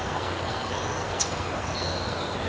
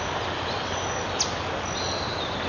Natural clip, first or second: second